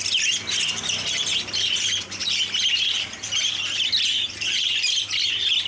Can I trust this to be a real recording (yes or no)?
yes